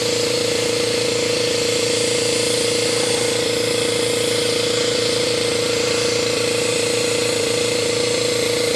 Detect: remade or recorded remade